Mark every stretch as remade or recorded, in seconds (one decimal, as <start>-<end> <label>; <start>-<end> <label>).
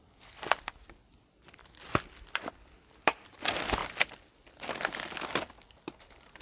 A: 0.0-6.4 recorded